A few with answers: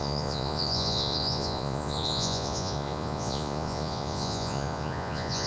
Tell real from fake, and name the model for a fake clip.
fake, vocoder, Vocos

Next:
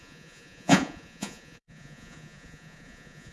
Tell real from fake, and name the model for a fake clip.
fake, vocoder, Vocos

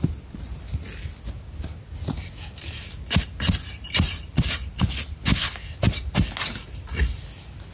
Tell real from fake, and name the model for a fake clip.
real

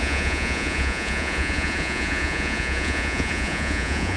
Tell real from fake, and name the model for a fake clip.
fake, vocoder, Vocos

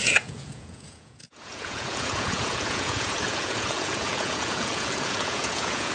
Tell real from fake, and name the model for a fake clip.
fake, vocoder, Vocos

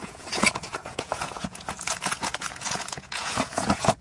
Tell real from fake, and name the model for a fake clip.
fake, vocoder, Vocos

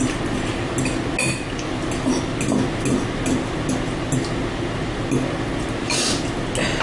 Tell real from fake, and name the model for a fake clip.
real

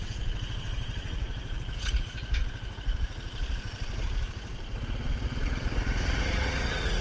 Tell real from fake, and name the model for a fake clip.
fake, vocoder, Vocos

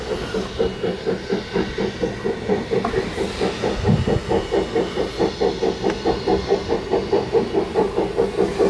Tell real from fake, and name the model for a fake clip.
real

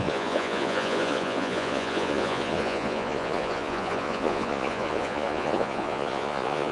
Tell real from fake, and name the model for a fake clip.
fake, vocoder, Vocos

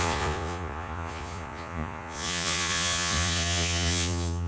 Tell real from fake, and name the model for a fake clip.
fake, vocoder, Vocos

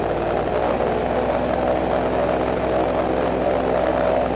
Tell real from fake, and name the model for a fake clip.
real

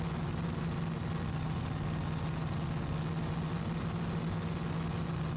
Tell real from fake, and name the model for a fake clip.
real